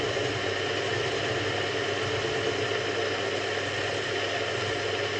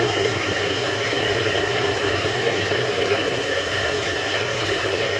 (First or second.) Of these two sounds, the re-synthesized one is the second